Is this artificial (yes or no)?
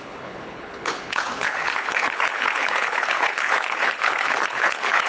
yes